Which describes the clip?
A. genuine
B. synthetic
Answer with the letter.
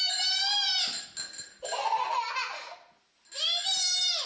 A